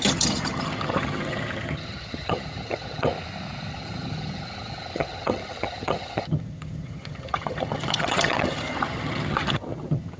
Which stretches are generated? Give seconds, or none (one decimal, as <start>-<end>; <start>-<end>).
0.0-3.1; 3.7-10.2

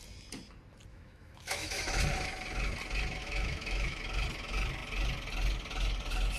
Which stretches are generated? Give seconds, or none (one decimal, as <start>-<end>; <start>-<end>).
0.9-2.0; 3.2-4.0

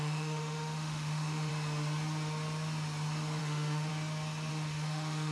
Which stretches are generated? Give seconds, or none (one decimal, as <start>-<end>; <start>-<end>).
0.0-1.5; 3.4-3.9; 4.5-5.3

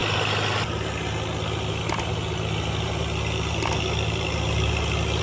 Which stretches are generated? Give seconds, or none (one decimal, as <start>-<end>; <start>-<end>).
none

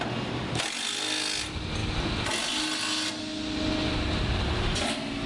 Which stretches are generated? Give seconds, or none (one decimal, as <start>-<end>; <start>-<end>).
none

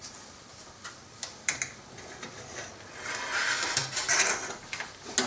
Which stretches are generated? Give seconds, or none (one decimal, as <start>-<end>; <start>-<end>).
0.0-2.7; 3.8-4.6